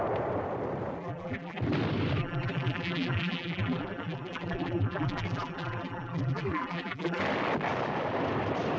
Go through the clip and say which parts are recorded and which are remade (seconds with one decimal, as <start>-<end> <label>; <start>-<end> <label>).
0.0-1.0 recorded; 1.0-1.6 remade; 1.6-2.2 recorded; 2.2-7.2 remade; 7.2-8.8 recorded

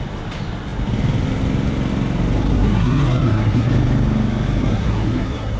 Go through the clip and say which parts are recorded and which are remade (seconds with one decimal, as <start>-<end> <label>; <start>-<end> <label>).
0.0-2.5 recorded; 2.5-3.7 remade; 3.7-4.6 recorded; 4.6-5.6 remade

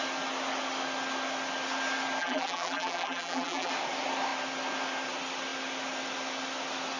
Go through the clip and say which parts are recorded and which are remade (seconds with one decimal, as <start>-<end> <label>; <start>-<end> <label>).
0.0-2.2 recorded; 2.2-3.7 remade; 3.7-7.0 recorded

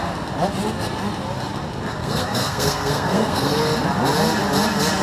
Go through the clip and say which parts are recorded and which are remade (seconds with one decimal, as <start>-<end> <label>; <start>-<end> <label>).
0.0-2.0 recorded; 2.0-3.6 remade; 3.6-5.0 recorded